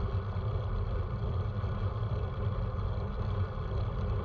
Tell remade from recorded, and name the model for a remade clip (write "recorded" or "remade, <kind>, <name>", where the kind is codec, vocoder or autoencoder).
recorded